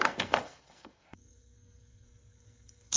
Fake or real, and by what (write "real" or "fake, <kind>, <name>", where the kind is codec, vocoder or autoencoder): fake, codec, SNAC